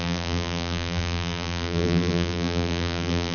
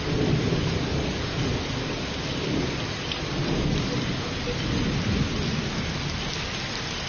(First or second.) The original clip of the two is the second